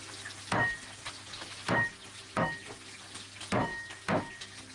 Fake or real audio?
real